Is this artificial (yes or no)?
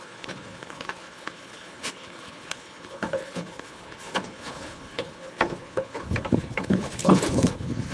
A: yes